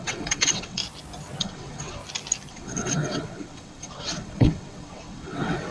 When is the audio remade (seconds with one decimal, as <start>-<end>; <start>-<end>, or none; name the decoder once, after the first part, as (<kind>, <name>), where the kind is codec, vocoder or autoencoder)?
0.0-0.8 (vocoder, WaveNeXt); 1.4-2.0; 2.5-5.7